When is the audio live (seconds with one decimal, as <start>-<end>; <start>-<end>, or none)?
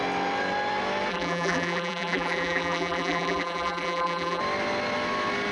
0.0-1.1; 4.4-5.5